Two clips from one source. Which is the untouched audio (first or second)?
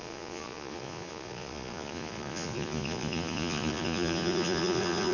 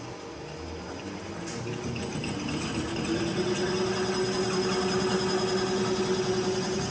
second